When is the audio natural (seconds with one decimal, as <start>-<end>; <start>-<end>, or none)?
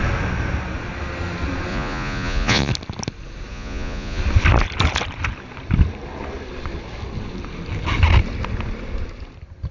0.0-1.7; 2.7-3.5; 4.2-9.7